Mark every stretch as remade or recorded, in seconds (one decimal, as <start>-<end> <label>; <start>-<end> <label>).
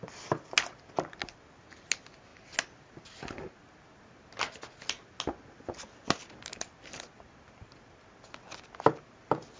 0.0-9.6 recorded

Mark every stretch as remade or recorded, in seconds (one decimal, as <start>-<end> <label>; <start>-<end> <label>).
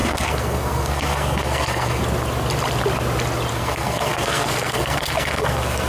0.0-2.0 remade; 2.0-3.5 recorded; 3.5-5.9 remade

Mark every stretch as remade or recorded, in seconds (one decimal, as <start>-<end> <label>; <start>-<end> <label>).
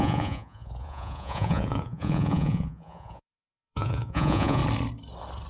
0.0-4.6 remade; 4.6-5.5 recorded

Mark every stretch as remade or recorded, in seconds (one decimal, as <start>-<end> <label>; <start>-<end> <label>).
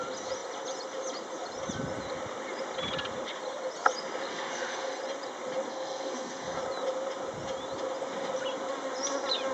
0.0-4.3 recorded; 4.3-5.0 remade; 5.0-5.7 recorded; 5.7-6.6 remade; 6.6-9.5 recorded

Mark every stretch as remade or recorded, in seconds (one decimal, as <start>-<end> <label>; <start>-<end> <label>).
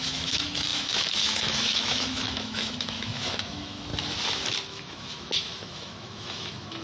0.0-3.9 remade; 3.9-4.7 recorded; 4.7-6.8 remade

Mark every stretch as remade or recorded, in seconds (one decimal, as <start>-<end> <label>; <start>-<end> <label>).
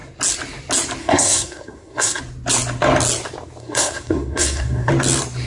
0.0-1.0 recorded; 1.0-2.2 remade; 2.2-3.6 recorded; 3.6-4.9 remade; 4.9-5.5 recorded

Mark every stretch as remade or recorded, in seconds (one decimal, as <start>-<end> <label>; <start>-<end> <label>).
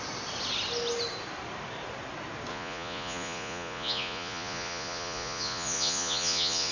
0.0-2.5 recorded; 2.5-6.7 remade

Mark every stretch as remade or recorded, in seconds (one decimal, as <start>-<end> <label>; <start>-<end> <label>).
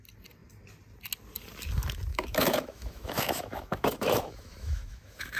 0.0-2.1 recorded; 2.1-5.4 remade